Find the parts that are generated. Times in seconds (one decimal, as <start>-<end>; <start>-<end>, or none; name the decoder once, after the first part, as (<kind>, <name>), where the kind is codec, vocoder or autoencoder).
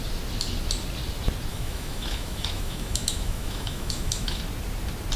1.5-4.4 (autoencoder, DAC-VAE)